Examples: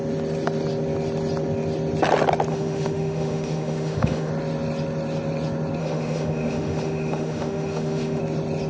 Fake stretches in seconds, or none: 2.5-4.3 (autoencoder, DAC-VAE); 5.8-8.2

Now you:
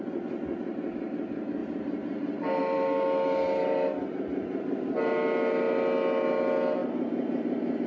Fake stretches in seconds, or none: none

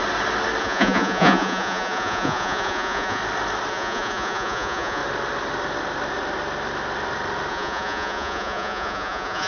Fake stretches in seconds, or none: 0.6-3.2 (vocoder, Vocos); 3.7-5.0; 7.5-9.5

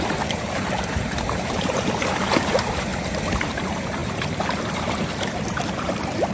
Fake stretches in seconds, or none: 0.0-2.9 (vocoder, BigVGAN v2); 3.5-6.3

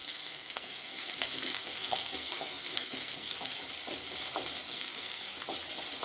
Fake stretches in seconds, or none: 0.0-3.6 (codec, SNAC); 4.7-5.3

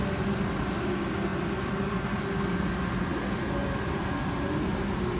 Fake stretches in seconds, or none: none